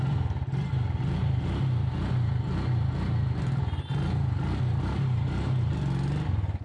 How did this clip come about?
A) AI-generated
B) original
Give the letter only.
B